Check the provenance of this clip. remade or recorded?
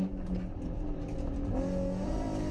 recorded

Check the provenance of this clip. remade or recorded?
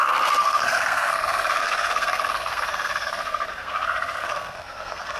remade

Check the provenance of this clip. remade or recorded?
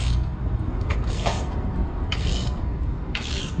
remade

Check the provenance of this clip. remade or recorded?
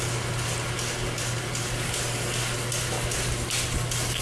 recorded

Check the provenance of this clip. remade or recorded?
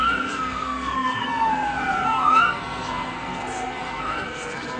remade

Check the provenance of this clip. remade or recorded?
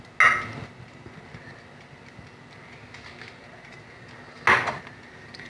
recorded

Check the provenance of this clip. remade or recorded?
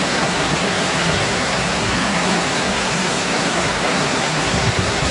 remade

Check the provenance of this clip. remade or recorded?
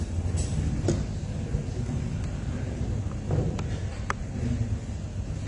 recorded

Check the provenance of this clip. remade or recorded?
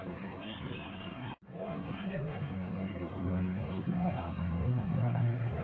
remade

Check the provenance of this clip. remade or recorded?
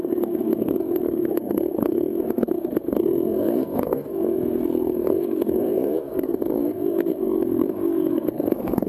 remade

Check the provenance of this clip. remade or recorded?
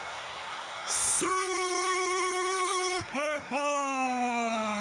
remade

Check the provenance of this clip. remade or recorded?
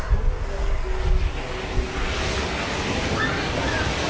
recorded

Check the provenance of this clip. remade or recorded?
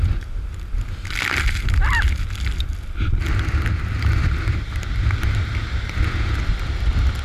recorded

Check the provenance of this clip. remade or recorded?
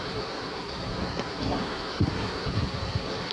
remade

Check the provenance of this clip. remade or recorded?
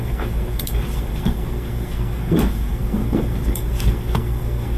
remade